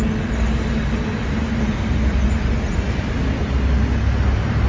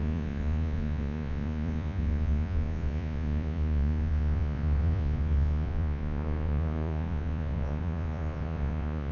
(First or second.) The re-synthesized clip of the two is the second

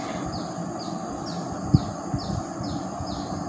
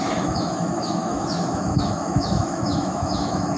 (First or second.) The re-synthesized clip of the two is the second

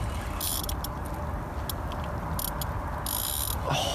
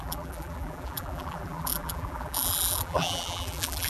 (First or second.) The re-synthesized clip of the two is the second